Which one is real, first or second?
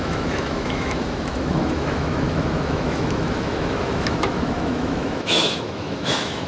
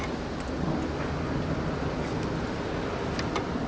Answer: second